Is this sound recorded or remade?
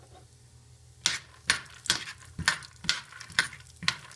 recorded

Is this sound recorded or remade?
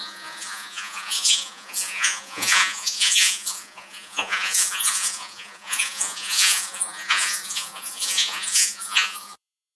remade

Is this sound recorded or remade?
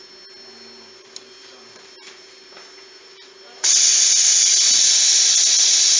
recorded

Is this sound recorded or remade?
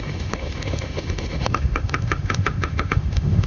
remade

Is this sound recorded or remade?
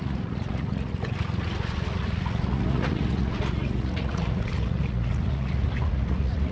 remade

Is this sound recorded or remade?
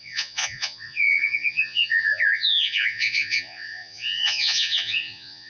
remade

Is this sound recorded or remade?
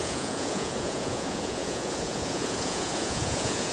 remade